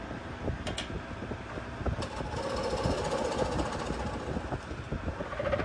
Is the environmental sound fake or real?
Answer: real